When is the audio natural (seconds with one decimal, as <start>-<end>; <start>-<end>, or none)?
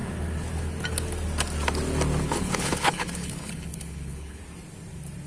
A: 0.0-2.2; 4.4-5.3